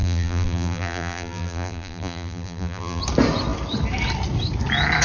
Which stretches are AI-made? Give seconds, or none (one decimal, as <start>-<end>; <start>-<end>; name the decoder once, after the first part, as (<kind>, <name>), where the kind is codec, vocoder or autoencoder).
0.0-3.0 (vocoder, BigVGAN v2)